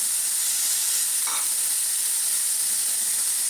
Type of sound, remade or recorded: recorded